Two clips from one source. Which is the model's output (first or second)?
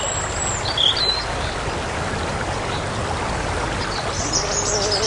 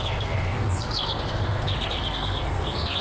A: second